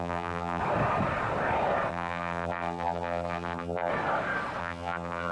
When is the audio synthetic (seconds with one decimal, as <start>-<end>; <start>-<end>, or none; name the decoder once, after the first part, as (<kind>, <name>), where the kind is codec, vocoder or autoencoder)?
0.0-0.6 (vocoder, BigVGAN v2); 1.9-3.9; 4.6-5.3